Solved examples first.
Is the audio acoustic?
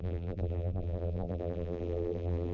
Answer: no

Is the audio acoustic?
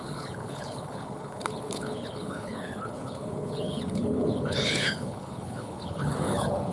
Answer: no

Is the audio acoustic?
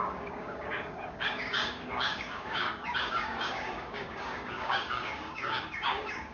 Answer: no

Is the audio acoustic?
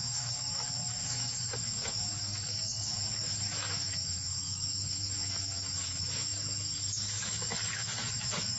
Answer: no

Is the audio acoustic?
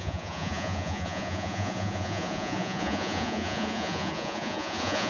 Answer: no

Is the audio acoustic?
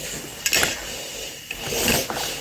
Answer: yes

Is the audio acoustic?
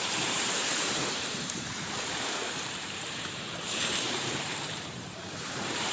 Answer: no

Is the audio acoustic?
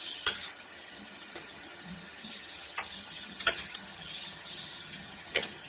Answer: no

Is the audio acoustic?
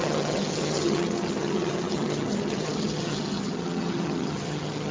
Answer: no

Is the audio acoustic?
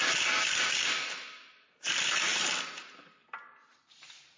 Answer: yes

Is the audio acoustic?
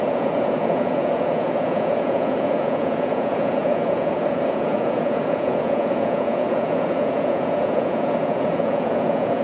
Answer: no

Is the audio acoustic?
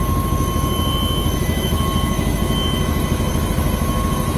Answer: no